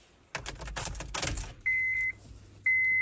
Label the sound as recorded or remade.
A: recorded